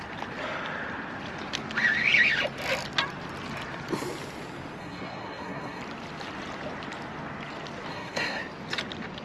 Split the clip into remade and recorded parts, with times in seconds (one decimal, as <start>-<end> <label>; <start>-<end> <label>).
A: 0.0-4.8 recorded; 4.8-5.8 remade; 5.8-7.9 recorded; 7.9-8.4 remade; 8.4-9.2 recorded